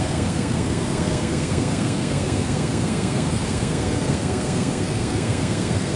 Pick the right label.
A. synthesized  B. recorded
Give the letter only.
A